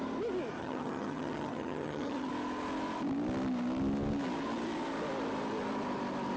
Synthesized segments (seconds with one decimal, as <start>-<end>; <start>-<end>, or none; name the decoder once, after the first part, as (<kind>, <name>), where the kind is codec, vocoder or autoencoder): 0.6-2.3 (vocoder, HiFi-GAN)